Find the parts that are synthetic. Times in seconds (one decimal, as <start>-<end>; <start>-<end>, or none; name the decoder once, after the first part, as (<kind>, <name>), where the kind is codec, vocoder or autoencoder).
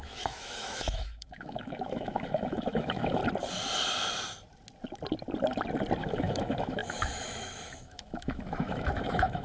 0.0-3.2 (autoencoder, DAC-VAE); 6.0-9.4